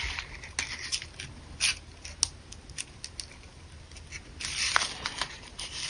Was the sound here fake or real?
real